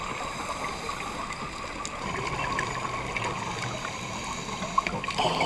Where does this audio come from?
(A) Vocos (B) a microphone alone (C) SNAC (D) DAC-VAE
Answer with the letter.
B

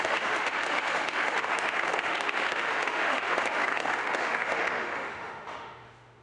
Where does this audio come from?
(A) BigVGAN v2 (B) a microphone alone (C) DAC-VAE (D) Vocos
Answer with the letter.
C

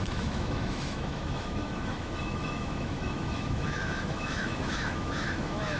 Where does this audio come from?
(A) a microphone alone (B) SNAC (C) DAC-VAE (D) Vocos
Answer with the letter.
C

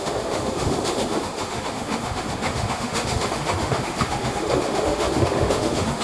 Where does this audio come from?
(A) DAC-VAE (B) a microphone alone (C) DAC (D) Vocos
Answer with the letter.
A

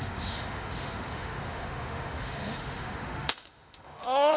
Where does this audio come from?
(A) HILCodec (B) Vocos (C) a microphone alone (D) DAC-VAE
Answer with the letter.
D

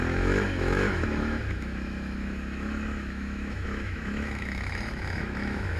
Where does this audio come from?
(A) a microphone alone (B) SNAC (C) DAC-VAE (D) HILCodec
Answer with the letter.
C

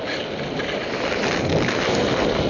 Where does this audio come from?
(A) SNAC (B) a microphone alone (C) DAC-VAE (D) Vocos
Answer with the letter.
B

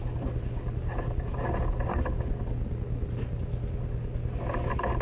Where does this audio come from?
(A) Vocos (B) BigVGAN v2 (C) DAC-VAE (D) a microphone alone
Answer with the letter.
D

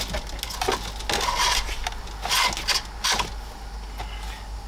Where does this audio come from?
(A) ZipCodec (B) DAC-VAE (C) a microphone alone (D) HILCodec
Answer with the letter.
C